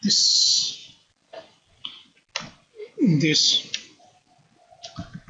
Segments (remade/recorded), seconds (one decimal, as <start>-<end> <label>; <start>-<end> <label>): 0.0-5.3 recorded